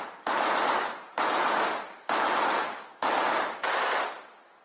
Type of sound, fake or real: real